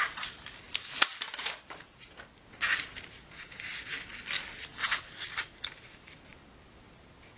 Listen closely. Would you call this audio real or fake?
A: real